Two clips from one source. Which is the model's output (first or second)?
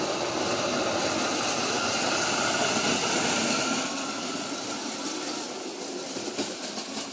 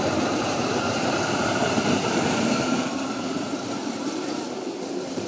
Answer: second